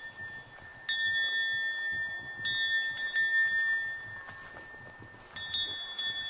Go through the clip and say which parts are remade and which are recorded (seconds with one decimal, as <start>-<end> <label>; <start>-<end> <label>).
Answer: 0.0-6.3 recorded